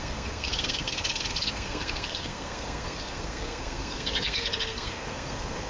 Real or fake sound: fake